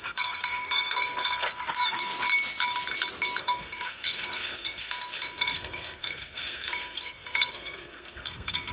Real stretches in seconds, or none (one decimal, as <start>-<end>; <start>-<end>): 2.1-3.4